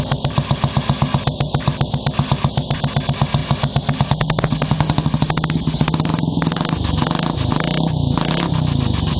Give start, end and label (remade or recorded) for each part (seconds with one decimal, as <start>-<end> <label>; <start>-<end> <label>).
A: 0.0-9.2 recorded